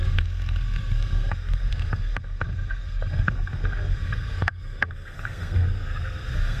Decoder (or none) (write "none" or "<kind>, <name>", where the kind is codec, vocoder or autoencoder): codec, SNAC